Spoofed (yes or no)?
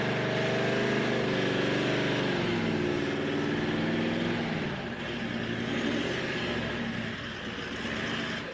no